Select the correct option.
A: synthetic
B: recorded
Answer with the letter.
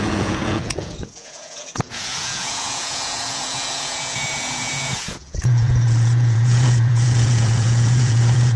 A